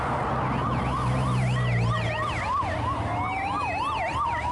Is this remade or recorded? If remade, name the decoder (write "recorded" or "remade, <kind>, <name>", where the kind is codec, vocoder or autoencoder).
recorded